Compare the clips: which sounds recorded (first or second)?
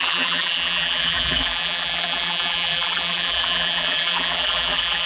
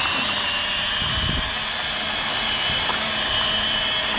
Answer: second